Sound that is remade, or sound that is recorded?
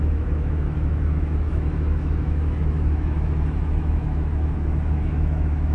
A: remade